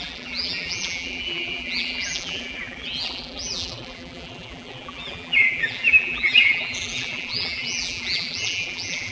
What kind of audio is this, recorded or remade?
remade